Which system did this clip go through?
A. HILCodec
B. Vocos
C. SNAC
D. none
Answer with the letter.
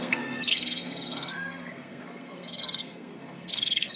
C